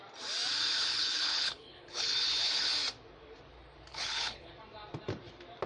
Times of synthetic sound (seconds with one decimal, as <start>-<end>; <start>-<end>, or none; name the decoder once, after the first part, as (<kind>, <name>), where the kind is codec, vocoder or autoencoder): 0.8-2.7 (codec, HILCodec); 3.9-4.5